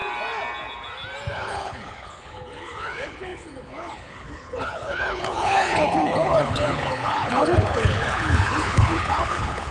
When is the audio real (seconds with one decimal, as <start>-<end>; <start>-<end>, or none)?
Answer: 0.0-1.3